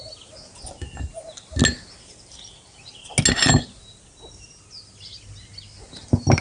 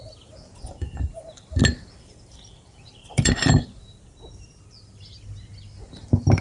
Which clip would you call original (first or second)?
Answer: first